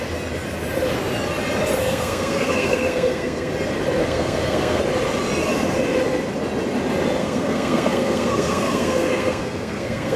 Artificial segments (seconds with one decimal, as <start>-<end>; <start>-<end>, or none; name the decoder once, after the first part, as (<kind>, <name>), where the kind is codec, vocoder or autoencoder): 1.8-3.5 (codec, SNAC); 4.0-4.8; 7.2-10.2